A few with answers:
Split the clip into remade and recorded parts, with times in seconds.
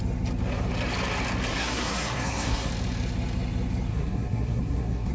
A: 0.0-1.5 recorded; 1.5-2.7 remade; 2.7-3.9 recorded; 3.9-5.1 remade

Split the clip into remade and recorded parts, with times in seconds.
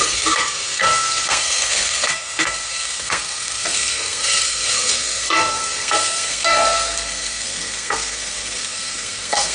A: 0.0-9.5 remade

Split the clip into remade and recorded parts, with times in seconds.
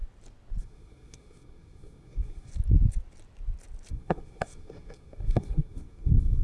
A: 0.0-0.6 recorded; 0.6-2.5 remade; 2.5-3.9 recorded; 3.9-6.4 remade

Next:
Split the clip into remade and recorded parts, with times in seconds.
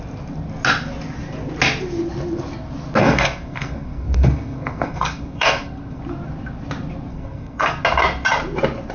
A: 0.0-3.0 recorded; 3.0-6.0 remade; 6.0-7.1 recorded; 7.1-7.8 remade; 7.8-8.9 recorded